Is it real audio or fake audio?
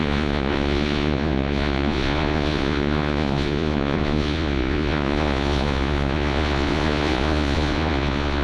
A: fake